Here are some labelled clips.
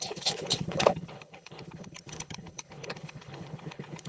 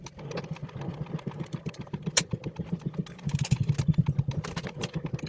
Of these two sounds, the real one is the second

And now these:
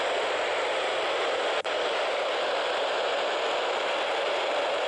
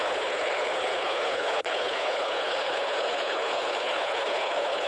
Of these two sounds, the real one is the first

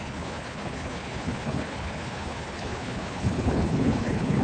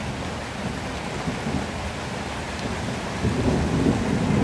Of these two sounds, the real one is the second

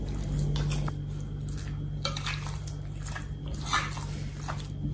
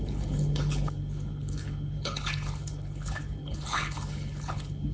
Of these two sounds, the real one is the first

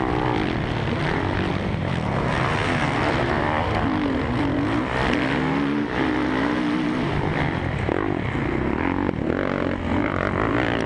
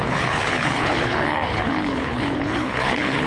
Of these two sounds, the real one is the first